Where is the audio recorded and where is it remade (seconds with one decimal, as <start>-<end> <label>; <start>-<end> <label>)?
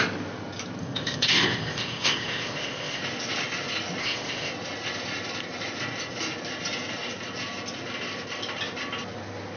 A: 0.0-0.8 recorded; 0.8-3.0 remade; 3.0-4.0 recorded; 4.0-4.5 remade; 4.5-9.6 recorded